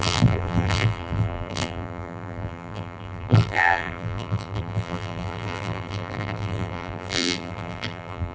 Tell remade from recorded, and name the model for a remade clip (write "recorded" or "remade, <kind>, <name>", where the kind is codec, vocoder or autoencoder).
remade, vocoder, BigVGAN v2